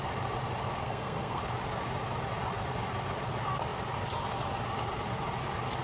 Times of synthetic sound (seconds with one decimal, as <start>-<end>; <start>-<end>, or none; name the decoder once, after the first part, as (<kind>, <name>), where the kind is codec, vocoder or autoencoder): 0.8-1.4 (codec, SNAC)